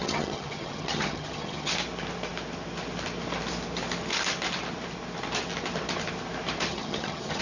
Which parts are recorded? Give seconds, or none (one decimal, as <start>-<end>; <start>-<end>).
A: 1.7-6.7